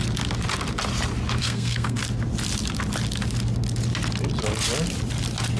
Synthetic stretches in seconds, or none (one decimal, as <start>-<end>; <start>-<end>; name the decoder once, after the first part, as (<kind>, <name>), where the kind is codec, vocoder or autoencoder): 1.4-2.0 (codec, SNAC)